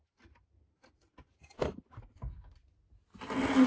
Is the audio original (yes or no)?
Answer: yes